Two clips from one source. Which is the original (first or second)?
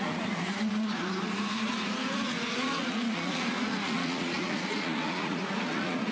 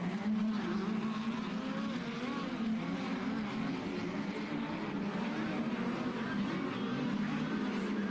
second